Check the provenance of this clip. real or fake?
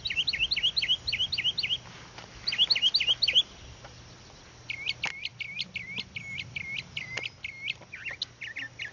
real